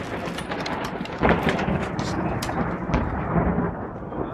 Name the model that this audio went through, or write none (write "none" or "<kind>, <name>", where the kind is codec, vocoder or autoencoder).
vocoder, BigVGAN v2